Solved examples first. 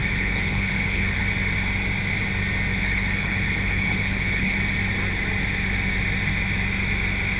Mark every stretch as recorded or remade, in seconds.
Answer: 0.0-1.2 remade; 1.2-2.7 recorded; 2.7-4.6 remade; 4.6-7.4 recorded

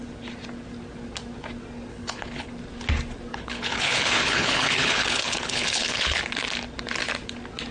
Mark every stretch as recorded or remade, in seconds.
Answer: 0.0-1.9 recorded; 1.9-2.5 remade; 2.5-3.3 recorded; 3.3-6.2 remade; 6.2-7.7 recorded